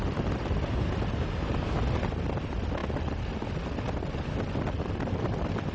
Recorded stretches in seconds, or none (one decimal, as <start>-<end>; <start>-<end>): 0.0-5.7